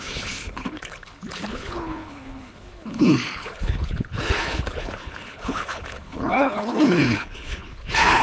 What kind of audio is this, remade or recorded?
remade